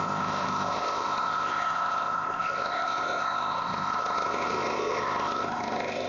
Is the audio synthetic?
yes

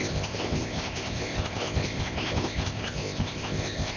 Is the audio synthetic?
yes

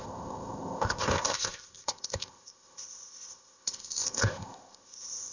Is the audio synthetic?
yes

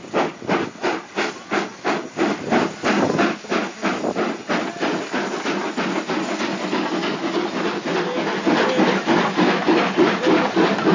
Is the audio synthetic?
no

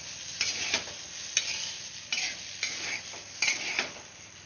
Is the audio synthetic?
no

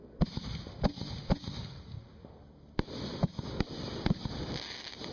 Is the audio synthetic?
no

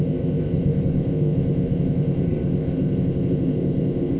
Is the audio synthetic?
yes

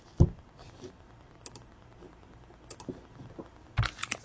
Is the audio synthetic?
no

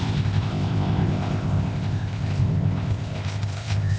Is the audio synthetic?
yes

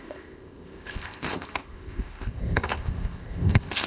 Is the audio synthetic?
yes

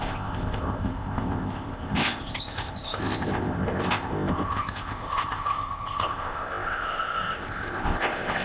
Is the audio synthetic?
yes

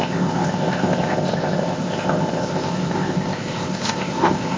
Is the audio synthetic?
yes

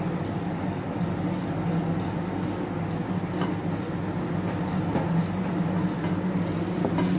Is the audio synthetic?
no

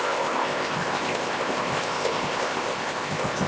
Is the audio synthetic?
yes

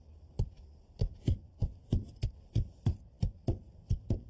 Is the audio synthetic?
no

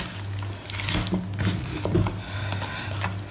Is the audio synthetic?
no